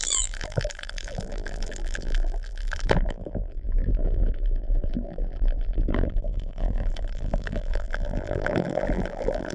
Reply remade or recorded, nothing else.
remade